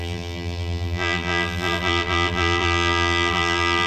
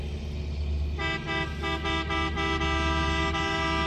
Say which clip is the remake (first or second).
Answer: first